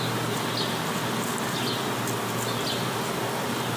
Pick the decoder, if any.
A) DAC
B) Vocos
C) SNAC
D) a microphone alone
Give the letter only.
D